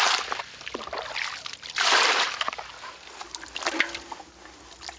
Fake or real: real